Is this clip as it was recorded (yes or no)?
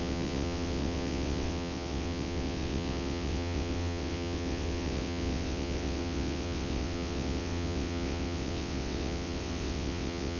no